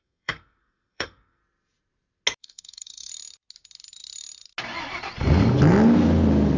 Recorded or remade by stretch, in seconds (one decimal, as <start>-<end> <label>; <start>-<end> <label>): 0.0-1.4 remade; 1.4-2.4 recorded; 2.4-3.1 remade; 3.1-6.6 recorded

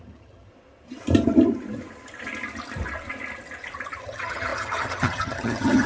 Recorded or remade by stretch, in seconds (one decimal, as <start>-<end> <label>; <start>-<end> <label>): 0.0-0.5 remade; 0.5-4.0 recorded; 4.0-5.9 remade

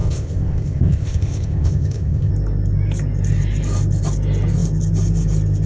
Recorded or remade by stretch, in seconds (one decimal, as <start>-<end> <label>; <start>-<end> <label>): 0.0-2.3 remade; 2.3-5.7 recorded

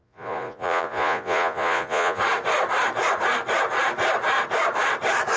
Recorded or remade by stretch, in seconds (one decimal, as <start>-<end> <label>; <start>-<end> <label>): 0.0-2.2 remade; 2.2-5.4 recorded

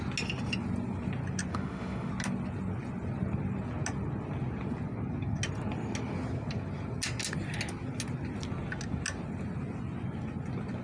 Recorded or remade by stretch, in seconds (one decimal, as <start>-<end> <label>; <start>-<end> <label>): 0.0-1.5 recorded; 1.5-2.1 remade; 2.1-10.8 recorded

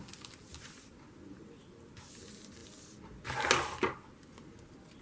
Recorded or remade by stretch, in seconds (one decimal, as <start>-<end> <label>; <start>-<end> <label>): 0.0-5.0 recorded

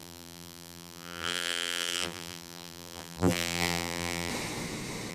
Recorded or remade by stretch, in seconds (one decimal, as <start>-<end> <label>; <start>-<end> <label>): 0.0-4.3 remade; 4.3-5.1 recorded